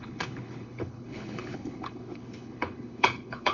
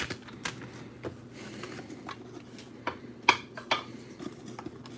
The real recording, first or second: second